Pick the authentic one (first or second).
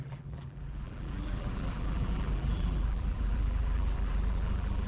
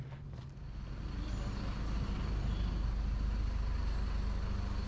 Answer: second